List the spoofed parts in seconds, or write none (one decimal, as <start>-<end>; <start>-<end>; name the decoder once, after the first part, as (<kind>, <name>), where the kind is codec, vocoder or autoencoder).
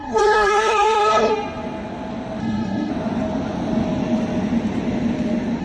0.0-1.3 (codec, SNAC); 2.4-2.9